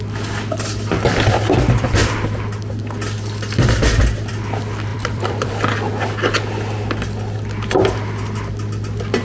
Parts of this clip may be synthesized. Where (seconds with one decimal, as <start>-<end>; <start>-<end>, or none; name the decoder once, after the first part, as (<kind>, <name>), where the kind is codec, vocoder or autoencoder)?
4.9-5.5 (vocoder, BigVGAN v2)